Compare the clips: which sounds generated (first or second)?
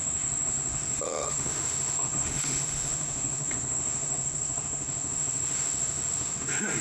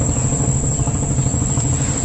first